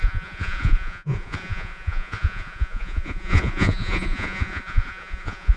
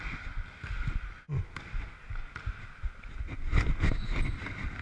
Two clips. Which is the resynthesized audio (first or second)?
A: first